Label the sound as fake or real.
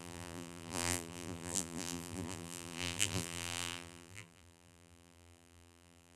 fake